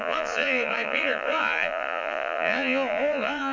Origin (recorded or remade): remade